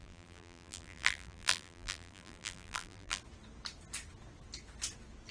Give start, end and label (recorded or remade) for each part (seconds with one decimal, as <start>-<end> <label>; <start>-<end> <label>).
0.0-3.2 remade; 3.2-5.3 recorded